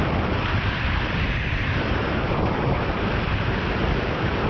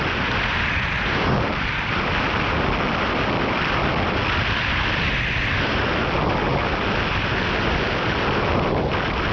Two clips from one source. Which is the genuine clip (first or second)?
second